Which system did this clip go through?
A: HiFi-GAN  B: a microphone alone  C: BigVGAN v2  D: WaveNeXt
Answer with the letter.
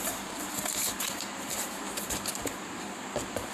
C